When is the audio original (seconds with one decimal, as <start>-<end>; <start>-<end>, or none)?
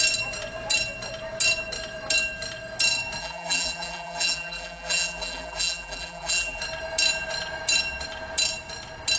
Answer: 0.0-3.2; 6.6-9.2